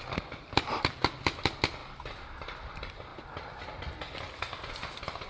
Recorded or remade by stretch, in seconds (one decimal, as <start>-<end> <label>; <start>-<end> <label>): 0.0-5.3 recorded